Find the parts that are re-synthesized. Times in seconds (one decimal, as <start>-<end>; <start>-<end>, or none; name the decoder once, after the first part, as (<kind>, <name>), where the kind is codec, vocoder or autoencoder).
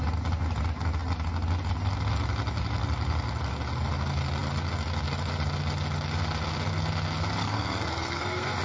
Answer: 7.4-8.6 (codec, SNAC)